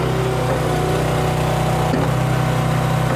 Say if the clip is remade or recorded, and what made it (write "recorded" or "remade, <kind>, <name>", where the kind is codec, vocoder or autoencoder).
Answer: recorded